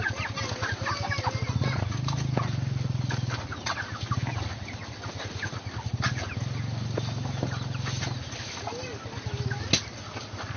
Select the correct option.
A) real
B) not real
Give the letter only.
A